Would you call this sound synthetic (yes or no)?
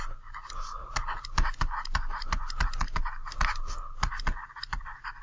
no